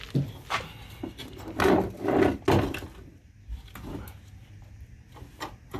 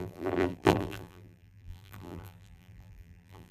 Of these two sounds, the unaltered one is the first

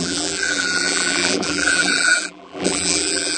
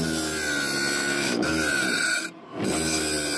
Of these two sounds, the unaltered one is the second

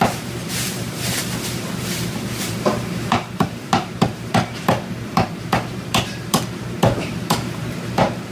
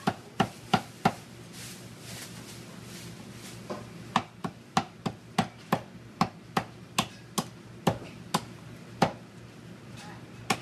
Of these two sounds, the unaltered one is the second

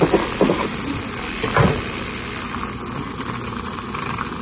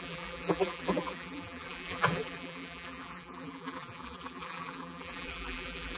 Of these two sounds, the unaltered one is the first